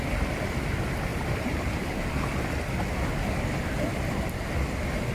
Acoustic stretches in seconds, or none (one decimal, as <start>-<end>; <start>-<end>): 0.0-1.1; 2.1-5.1